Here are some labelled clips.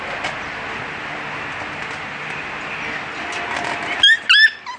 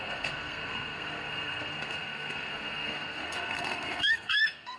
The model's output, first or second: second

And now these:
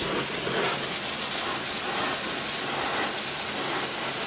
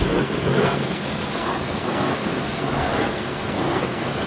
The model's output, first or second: second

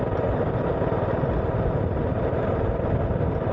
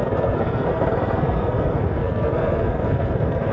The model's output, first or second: second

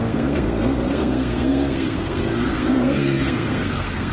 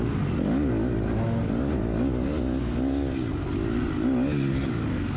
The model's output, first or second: first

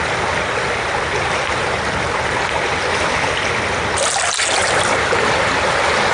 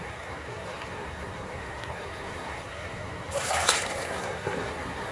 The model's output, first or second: second